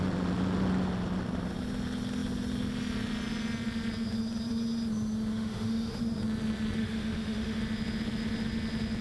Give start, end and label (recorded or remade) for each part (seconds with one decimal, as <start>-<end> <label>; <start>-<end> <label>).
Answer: 0.0-5.3 recorded; 5.3-6.0 remade; 6.0-6.8 recorded; 6.8-7.6 remade; 7.6-9.0 recorded